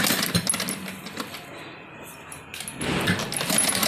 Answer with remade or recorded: recorded